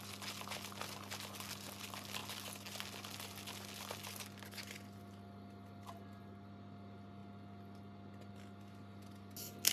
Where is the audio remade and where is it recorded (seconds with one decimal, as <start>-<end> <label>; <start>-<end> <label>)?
0.0-9.7 recorded